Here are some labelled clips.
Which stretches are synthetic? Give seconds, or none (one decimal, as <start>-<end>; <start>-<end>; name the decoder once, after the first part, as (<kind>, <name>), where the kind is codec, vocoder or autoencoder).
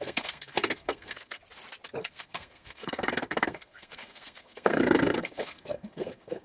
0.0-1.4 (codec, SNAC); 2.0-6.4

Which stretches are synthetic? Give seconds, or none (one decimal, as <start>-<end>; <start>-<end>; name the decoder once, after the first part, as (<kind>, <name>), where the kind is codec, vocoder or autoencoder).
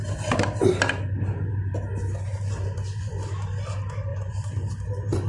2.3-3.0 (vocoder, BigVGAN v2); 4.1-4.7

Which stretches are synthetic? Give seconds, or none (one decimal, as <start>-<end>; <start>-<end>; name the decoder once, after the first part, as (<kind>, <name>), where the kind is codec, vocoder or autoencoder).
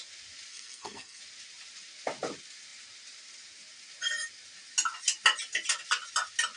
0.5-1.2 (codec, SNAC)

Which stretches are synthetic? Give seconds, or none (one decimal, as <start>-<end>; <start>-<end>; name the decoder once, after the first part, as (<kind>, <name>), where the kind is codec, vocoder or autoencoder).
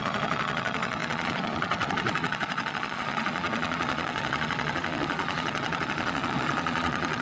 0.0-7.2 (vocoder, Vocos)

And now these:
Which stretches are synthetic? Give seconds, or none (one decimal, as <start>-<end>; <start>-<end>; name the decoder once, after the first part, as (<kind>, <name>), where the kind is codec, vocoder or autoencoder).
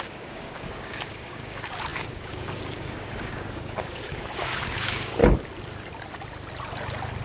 0.0-5.2 (codec, DAC)